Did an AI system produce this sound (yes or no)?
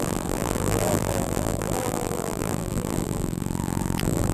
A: yes